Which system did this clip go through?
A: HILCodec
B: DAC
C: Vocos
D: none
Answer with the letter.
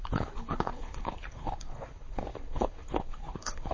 A